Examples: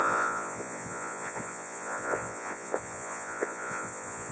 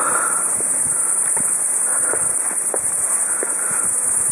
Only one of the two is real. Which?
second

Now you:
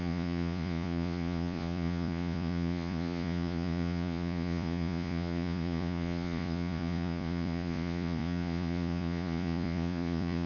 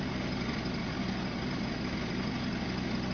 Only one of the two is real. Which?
second